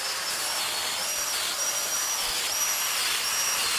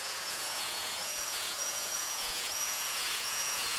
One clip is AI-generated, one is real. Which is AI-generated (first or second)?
second